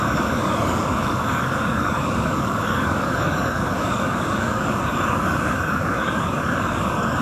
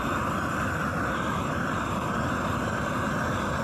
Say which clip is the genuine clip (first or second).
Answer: second